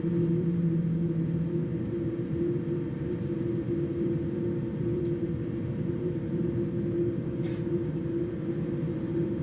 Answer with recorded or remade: remade